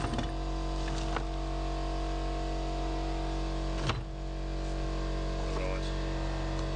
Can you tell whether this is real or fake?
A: real